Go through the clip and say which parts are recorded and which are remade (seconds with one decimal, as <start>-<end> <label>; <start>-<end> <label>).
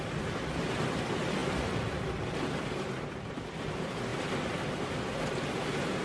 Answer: 0.0-6.0 recorded